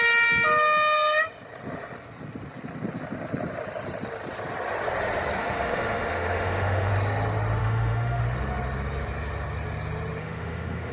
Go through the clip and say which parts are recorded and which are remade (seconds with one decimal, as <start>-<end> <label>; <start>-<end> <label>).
0.0-5.4 recorded; 5.4-6.9 remade; 6.9-7.6 recorded; 7.6-8.2 remade; 8.2-10.2 recorded; 10.2-10.9 remade